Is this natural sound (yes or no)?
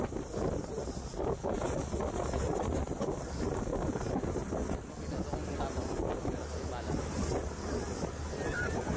yes